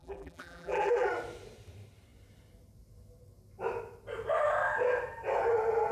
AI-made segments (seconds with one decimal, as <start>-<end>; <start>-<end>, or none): 0.0-1.1